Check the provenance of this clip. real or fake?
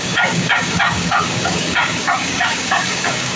fake